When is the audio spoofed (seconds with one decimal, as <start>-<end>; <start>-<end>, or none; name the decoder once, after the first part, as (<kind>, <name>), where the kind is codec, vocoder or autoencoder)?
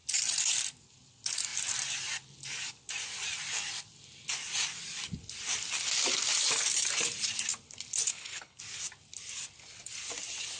8.1-8.6 (codec, HILCodec)